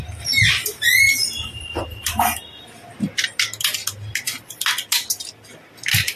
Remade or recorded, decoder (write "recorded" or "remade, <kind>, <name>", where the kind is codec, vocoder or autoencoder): recorded